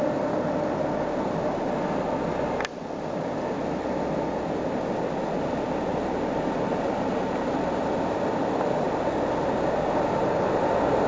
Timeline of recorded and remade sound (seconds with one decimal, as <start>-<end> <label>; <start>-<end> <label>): 0.0-11.1 recorded